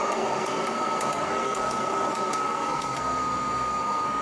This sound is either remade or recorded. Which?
remade